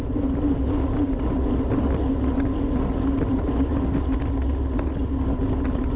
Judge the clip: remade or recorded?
recorded